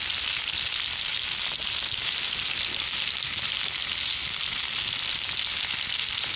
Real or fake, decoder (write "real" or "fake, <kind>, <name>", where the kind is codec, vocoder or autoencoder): real